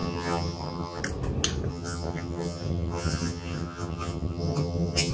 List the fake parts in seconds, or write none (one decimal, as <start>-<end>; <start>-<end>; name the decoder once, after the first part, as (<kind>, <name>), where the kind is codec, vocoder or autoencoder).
0.0-1.0 (vocoder, HiFi-GAN); 1.7-5.1